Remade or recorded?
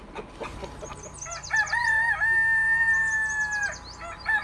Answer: recorded